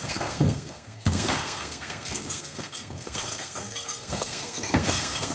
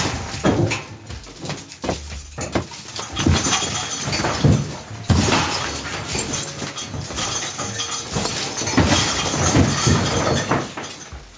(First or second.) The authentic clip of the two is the second